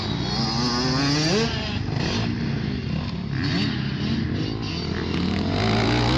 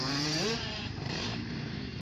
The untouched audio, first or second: first